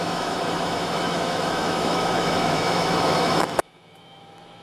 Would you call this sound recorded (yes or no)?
no